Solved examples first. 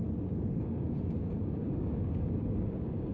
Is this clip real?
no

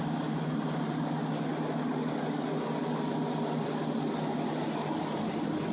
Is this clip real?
yes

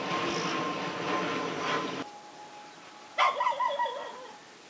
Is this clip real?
yes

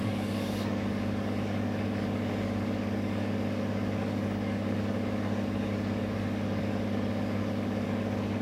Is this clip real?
no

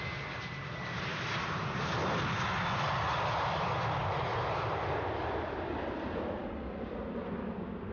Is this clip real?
yes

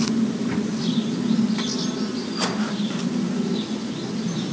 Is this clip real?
yes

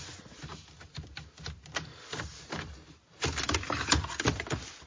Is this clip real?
yes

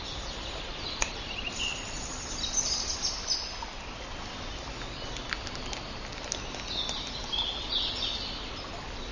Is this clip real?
yes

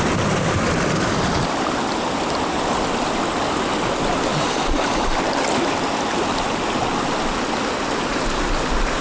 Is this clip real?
yes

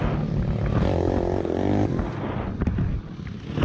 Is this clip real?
yes